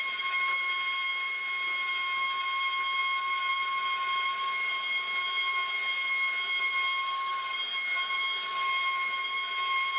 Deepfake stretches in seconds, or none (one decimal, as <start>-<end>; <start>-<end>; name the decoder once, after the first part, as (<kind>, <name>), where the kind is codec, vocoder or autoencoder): none